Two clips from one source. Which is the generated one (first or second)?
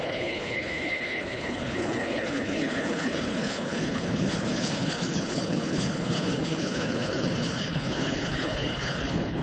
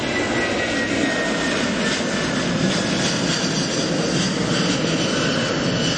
first